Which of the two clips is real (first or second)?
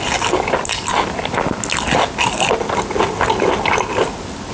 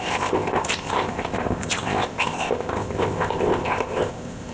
first